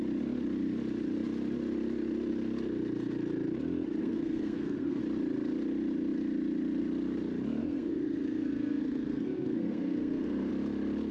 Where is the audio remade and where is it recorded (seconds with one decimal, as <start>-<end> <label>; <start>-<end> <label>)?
0.0-4.0 recorded; 4.0-5.0 remade; 5.0-7.6 recorded; 7.6-10.5 remade; 10.5-11.1 recorded